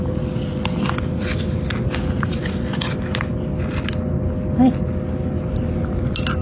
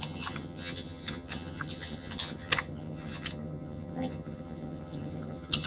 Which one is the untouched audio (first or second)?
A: first